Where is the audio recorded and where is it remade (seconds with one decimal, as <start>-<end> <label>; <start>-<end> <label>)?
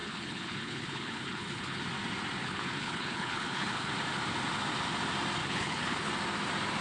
0.0-1.8 remade; 1.8-2.4 recorded; 2.4-3.9 remade; 3.9-5.4 recorded; 5.4-6.1 remade; 6.1-6.8 recorded